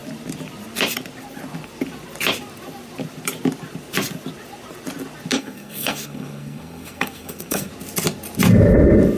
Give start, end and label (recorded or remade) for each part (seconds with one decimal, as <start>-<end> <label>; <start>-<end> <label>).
0.0-5.3 recorded; 5.3-7.7 remade; 7.7-9.2 recorded